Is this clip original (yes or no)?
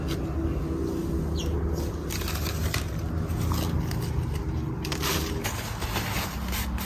yes